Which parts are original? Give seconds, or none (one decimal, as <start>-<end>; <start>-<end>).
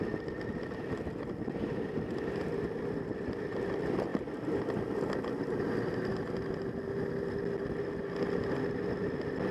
0.0-9.5